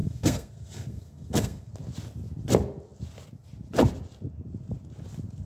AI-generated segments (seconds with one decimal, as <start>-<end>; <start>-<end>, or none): 0.0-1.7